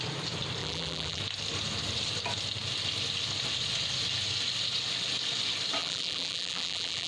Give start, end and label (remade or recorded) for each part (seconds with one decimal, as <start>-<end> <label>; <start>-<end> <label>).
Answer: 0.0-0.6 recorded; 0.6-1.2 remade; 1.2-5.8 recorded; 5.8-7.1 remade